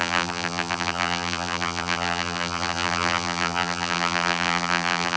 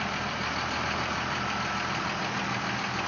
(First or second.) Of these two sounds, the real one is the second